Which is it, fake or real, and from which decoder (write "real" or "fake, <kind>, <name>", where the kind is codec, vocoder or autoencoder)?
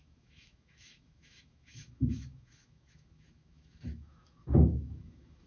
fake, autoencoder, DAC-VAE